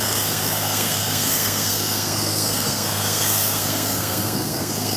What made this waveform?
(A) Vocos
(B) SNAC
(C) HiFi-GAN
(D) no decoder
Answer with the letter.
B